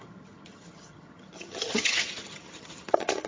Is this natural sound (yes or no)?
no